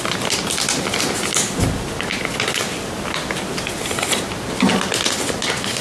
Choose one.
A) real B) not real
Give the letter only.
A